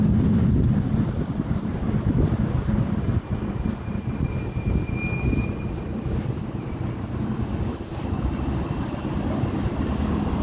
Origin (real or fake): fake